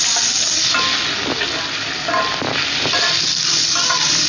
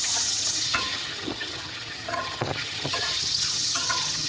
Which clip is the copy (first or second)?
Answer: second